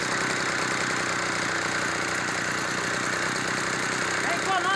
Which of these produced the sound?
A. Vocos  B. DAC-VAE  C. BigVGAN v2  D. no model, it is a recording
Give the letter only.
D